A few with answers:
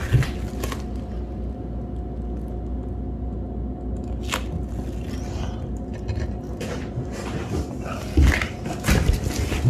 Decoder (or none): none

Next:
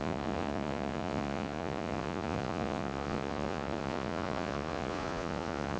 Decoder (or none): vocoder, Vocos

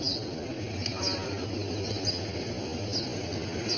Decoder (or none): none